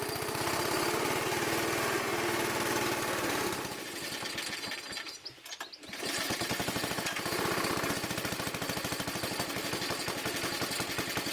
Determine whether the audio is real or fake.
real